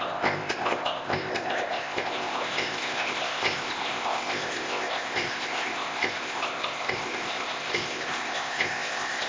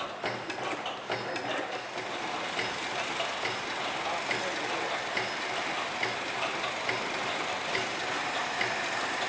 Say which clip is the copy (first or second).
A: first